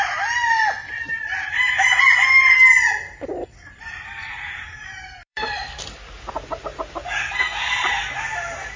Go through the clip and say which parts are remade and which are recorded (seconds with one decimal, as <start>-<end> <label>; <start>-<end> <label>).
0.0-0.8 recorded; 0.8-4.3 remade; 4.3-5.2 recorded; 5.2-5.7 remade; 5.7-8.0 recorded; 8.0-8.8 remade